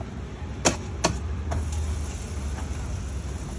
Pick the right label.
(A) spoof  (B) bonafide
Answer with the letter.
B